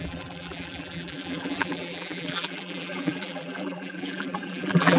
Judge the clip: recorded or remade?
remade